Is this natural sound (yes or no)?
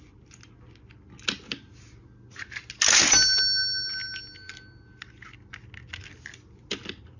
yes